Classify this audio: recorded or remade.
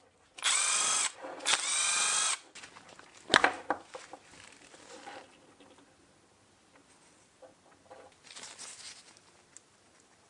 recorded